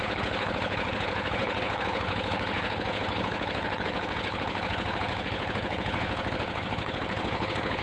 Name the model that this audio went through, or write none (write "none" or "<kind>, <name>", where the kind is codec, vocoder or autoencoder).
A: codec, HILCodec